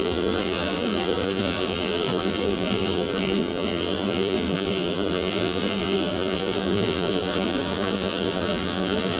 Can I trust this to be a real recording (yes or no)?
no